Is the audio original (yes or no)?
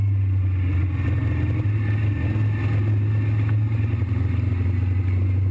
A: yes